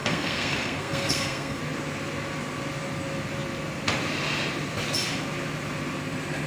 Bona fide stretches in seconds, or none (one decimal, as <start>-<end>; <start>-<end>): 1.6-6.5